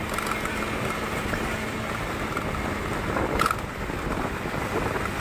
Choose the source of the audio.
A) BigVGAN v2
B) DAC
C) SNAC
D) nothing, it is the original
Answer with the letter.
D